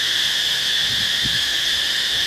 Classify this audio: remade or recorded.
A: remade